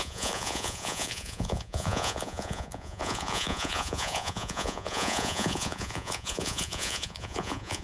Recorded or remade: remade